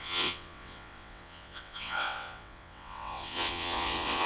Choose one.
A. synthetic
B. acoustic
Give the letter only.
A